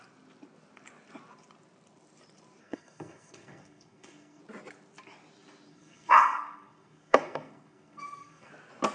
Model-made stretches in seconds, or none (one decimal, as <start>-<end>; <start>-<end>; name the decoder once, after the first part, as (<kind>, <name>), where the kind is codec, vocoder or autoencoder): 2.6-4.4 (codec, SNAC); 5.7-8.5